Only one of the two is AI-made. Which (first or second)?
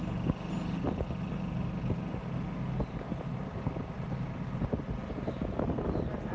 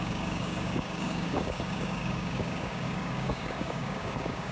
second